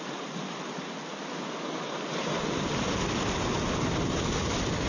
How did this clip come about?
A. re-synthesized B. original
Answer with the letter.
B